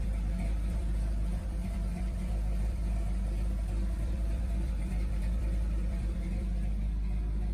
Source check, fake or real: fake